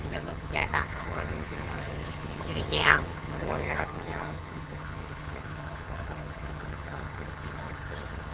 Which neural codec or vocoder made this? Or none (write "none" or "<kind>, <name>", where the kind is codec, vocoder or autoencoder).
vocoder, HiFi-GAN